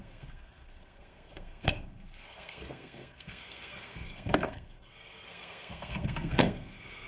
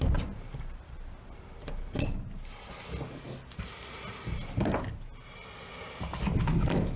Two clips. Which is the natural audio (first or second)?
second